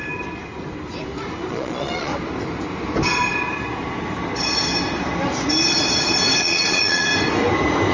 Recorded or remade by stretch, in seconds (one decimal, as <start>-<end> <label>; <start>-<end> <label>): 0.0-1.5 recorded; 1.5-2.1 remade; 2.1-6.4 recorded; 6.4-7.1 remade; 7.1-7.9 recorded